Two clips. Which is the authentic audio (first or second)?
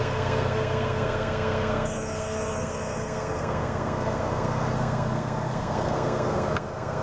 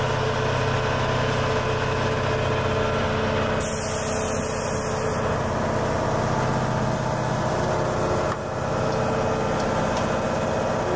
second